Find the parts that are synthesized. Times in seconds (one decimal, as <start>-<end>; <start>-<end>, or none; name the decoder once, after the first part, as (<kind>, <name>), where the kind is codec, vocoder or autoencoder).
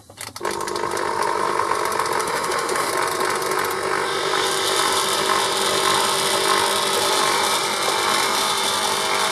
2.2-2.9 (autoencoder, DAC-VAE)